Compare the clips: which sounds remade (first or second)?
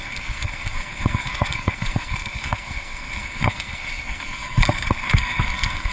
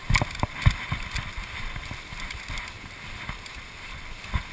first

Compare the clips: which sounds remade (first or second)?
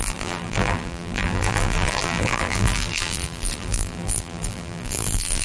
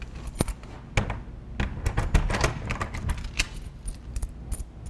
first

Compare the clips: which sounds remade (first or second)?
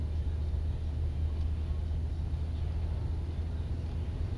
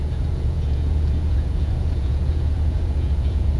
second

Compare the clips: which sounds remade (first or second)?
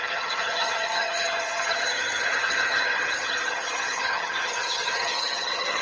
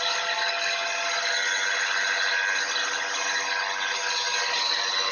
first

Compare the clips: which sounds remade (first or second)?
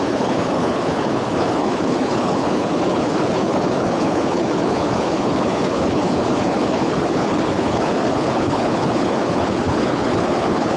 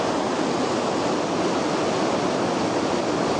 first